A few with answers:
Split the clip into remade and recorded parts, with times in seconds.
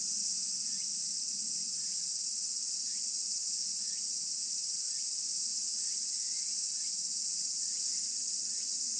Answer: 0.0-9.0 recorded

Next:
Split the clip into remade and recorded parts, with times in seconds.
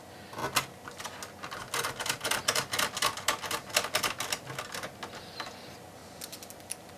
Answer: 0.0-7.0 recorded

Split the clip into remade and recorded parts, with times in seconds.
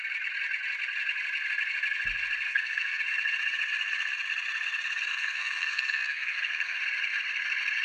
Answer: 0.0-2.5 recorded; 2.5-3.0 remade; 3.0-5.1 recorded; 5.1-6.8 remade; 6.8-7.8 recorded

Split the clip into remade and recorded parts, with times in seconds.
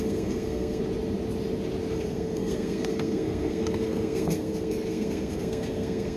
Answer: 0.0-0.8 remade; 0.8-1.9 recorded; 1.9-6.2 remade